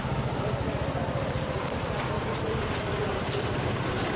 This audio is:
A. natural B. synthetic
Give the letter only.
A